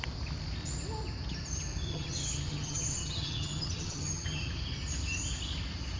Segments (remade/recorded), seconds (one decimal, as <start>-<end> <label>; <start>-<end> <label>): 0.0-1.9 recorded; 1.9-4.5 remade; 4.5-6.0 recorded

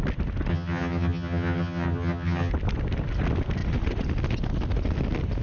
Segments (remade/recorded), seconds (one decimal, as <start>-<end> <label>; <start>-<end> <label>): 0.0-0.5 recorded; 0.5-2.5 remade; 2.5-5.4 recorded

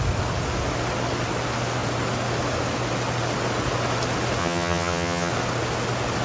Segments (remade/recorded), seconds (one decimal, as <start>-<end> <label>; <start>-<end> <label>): 0.0-4.4 recorded; 4.4-5.3 remade; 5.3-6.2 recorded

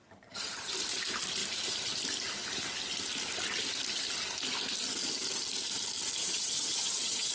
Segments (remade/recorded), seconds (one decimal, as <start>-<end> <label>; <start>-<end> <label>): 0.0-0.7 remade; 0.7-6.2 recorded; 6.2-7.3 remade

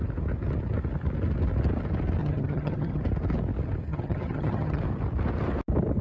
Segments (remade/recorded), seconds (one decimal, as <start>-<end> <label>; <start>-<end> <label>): 0.0-2.2 recorded; 2.2-3.0 remade; 3.0-3.9 recorded; 3.9-4.8 remade; 4.8-6.0 recorded

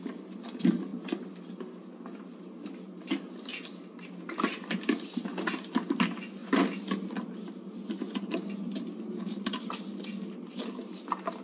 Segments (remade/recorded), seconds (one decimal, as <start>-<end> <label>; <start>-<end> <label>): 0.0-11.4 recorded

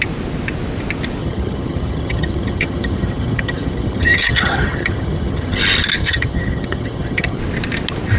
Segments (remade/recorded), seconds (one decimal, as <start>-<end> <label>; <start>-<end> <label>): 0.0-1.2 recorded; 1.2-5.6 remade; 5.6-6.0 recorded; 6.0-7.4 remade; 7.4-8.2 recorded

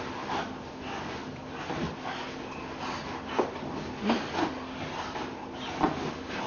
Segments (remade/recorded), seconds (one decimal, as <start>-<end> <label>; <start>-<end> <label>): 0.0-6.5 recorded